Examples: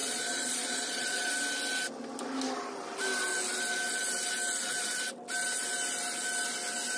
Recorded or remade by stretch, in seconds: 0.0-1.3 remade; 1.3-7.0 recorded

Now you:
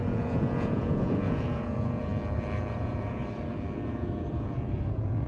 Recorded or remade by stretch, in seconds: 0.0-2.1 remade; 2.1-2.7 recorded; 2.7-3.2 remade; 3.2-3.9 recorded; 3.9-5.3 remade

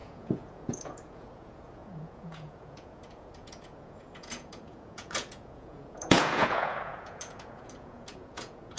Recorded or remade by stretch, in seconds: 0.0-8.8 remade

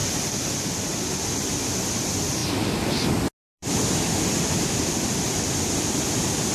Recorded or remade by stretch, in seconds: 0.0-6.5 recorded

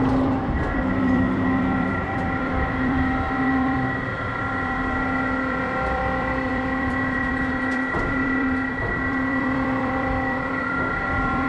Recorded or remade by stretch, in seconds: 0.0-11.5 remade

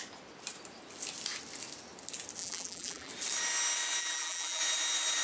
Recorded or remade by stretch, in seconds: 0.0-2.4 recorded; 2.4-3.1 remade; 3.1-4.0 recorded; 4.0-4.6 remade; 4.6-5.2 recorded